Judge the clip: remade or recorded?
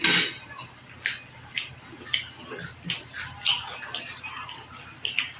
recorded